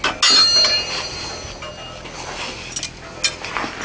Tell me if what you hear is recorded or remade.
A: recorded